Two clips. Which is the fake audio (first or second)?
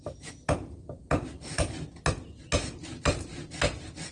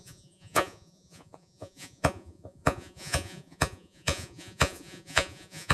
second